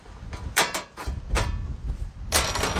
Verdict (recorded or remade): remade